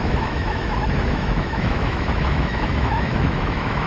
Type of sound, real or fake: fake